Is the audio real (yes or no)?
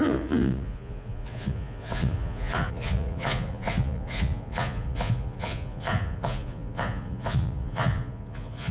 no